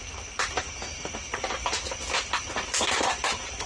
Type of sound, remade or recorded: recorded